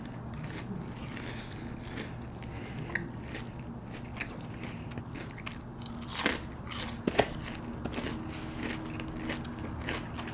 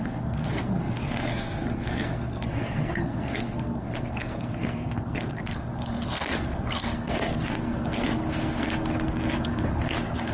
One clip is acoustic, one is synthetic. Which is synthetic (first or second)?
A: second